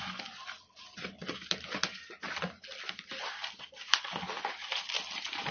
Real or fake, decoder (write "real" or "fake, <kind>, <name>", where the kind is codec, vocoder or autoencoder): real